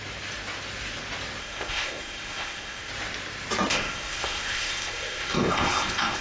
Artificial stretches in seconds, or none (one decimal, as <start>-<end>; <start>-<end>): 1.4-2.9; 3.7-6.2